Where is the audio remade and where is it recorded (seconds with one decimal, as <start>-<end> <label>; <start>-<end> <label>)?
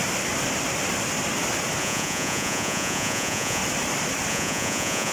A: 0.0-1.8 recorded; 1.8-3.6 remade; 3.6-4.3 recorded; 4.3-5.1 remade